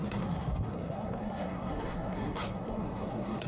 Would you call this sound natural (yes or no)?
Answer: no